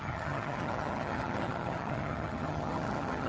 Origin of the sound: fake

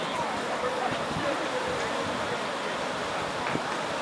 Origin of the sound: real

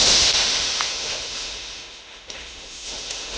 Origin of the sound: fake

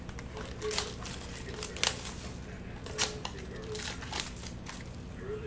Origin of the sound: real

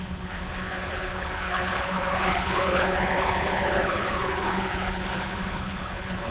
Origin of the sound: fake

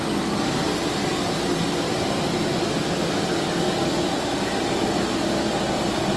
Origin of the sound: real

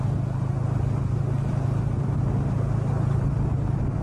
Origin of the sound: real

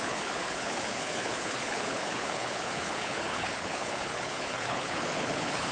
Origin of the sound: fake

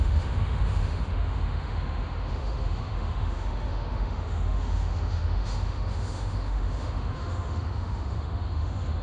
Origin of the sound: fake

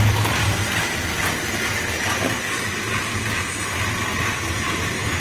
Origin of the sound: real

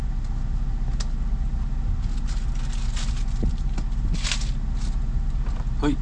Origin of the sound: real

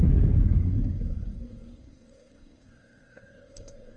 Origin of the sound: fake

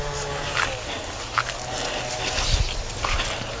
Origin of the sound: real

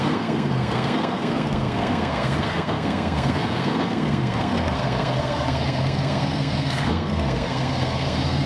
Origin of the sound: fake